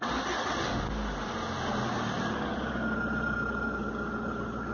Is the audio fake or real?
real